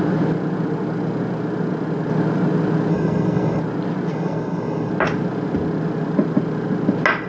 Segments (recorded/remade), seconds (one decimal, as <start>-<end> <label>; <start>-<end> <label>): 0.0-2.9 recorded; 2.9-3.6 remade; 3.6-4.1 recorded; 4.1-4.9 remade; 4.9-7.3 recorded